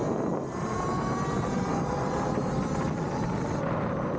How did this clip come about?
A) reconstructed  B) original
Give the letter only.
B